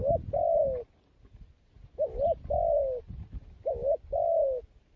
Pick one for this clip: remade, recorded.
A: recorded